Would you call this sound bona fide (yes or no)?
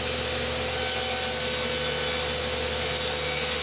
yes